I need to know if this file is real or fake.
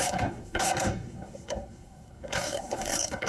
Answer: fake